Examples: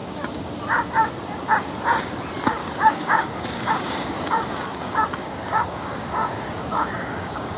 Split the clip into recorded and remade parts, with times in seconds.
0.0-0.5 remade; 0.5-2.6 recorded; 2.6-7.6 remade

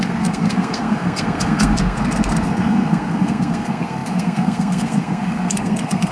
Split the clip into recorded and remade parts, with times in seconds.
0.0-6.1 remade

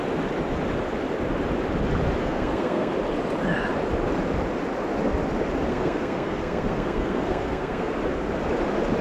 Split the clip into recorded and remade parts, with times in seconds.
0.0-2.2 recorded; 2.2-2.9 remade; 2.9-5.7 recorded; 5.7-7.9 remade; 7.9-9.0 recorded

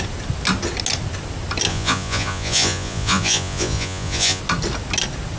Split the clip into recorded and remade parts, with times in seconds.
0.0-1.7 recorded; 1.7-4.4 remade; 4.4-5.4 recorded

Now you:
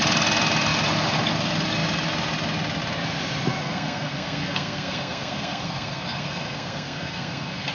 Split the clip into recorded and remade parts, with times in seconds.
0.0-3.6 recorded; 3.6-7.7 remade

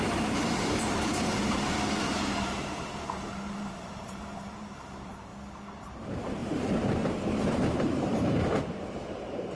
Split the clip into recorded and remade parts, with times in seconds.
0.0-5.3 remade; 5.3-5.8 recorded; 5.8-9.6 remade

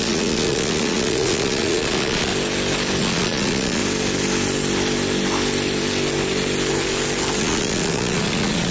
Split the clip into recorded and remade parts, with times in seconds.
0.0-2.3 remade; 2.3-3.0 recorded; 3.0-3.8 remade; 3.8-7.4 recorded; 7.4-8.7 remade

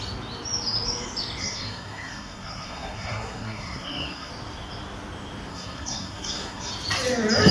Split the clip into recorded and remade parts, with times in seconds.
0.0-1.4 recorded; 1.4-4.3 remade; 4.3-5.5 recorded; 5.5-6.7 remade; 6.7-7.5 recorded